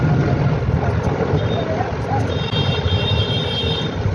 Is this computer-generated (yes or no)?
no